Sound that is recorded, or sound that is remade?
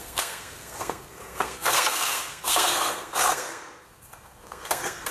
remade